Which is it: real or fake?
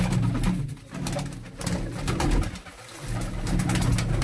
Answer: real